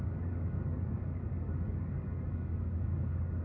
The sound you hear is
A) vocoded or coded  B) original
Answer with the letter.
A